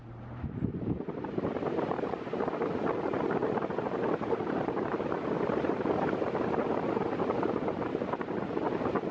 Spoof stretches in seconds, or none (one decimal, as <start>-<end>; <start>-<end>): 0.0-2.8; 3.4-7.8